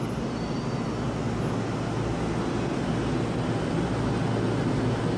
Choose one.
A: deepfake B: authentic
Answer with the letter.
B